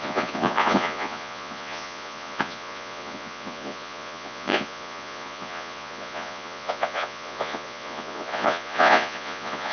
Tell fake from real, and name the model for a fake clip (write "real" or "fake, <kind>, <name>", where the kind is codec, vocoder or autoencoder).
fake, vocoder, Vocos